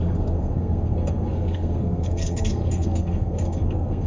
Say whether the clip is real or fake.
fake